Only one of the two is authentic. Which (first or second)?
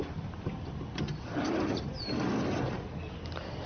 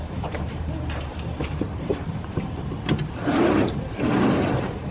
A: first